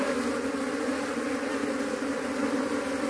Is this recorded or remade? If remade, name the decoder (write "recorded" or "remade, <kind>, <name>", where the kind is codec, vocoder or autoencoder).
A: recorded